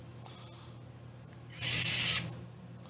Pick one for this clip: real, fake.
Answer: real